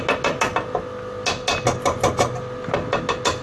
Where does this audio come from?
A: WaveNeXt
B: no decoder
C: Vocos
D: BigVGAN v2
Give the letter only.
B